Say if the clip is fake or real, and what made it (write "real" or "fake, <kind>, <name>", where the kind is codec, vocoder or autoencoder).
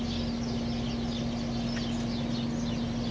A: real